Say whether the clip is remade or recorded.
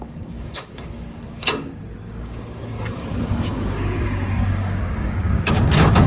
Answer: remade